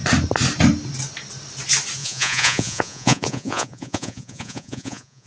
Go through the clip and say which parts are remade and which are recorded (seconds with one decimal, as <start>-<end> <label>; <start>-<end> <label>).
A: 0.0-2.0 recorded; 2.0-5.3 remade

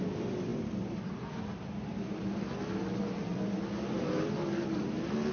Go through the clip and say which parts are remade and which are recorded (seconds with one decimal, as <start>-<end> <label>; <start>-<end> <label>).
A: 0.0-5.3 recorded

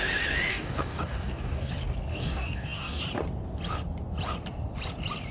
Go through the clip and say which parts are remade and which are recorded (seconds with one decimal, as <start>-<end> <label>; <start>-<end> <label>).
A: 0.0-0.5 recorded; 0.5-1.7 remade; 1.7-2.1 recorded; 2.1-3.0 remade; 3.0-5.3 recorded

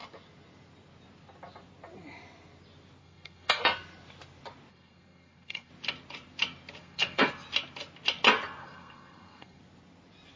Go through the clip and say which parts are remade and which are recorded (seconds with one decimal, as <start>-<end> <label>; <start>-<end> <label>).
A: 0.0-3.0 recorded; 3.0-3.6 remade; 3.6-4.7 recorded; 4.7-5.7 remade; 5.7-6.8 recorded; 6.8-7.3 remade; 7.3-8.6 recorded; 8.6-9.6 remade; 9.6-10.4 recorded

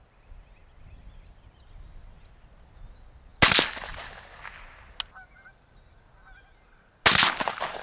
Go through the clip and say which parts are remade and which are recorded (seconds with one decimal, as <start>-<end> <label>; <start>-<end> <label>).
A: 0.0-7.8 recorded

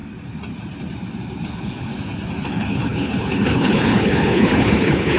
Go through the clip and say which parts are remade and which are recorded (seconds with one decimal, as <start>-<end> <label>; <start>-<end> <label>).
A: 0.0-1.5 recorded; 1.5-1.9 remade; 1.9-2.5 recorded; 2.5-5.2 remade

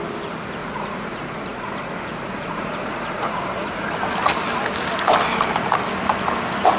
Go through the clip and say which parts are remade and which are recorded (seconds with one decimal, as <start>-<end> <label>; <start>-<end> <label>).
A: 0.0-0.6 recorded; 0.6-3.9 remade; 3.9-6.8 recorded

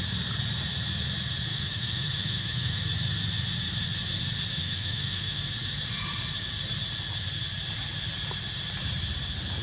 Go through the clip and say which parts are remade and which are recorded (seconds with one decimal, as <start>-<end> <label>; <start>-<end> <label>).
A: 0.0-1.5 recorded; 1.5-2.8 remade; 2.8-4.6 recorded; 4.6-5.4 remade; 5.4-9.6 recorded